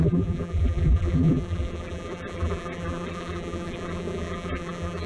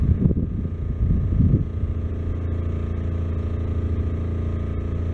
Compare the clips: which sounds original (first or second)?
second